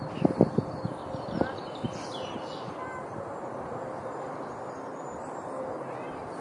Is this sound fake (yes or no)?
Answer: no